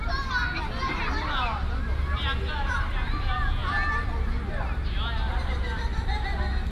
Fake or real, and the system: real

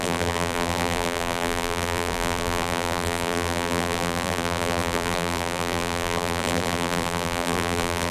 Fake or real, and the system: fake, vocoder, BigVGAN v2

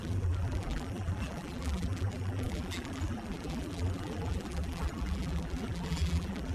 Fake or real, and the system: fake, vocoder, BigVGAN v2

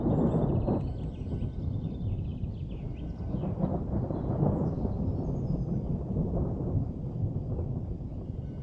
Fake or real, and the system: real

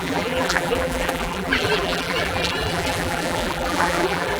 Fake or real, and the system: fake, vocoder, BigVGAN v2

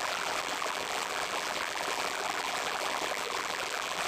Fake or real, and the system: fake, vocoder, BigVGAN v2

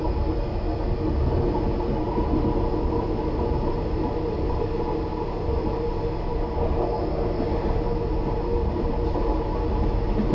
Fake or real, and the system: real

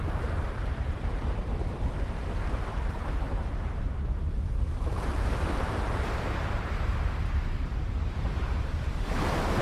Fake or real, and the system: fake, vocoder, BigVGAN v2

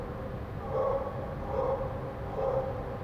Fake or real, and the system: real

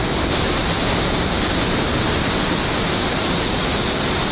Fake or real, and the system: real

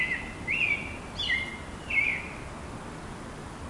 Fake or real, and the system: real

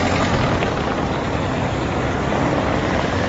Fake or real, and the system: real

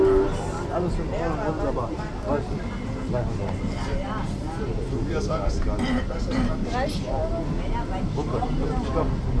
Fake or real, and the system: real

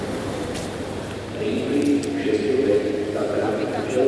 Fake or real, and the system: fake, vocoder, BigVGAN v2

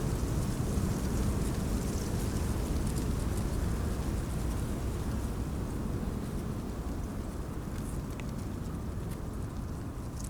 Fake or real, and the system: real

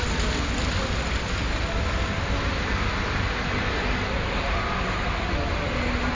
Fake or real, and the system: real